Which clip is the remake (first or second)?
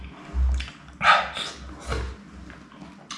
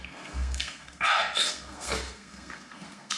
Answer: second